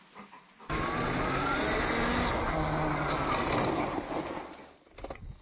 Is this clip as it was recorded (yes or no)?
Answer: yes